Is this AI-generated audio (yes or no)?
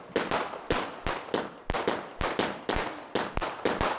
no